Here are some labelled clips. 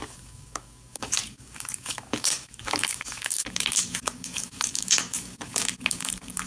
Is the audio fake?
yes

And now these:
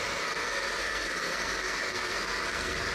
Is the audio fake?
yes